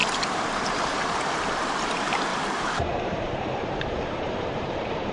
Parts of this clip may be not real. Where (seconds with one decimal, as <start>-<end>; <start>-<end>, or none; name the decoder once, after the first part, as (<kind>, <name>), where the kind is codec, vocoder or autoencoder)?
0.0-1.9 (vocoder, BigVGAN v2); 2.3-5.1